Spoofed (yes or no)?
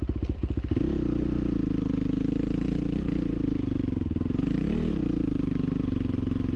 no